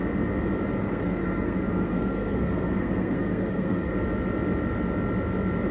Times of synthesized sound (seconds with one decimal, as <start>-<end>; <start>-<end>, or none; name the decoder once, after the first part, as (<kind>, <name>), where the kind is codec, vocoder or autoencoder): 0.8-3.9 (codec, SNAC)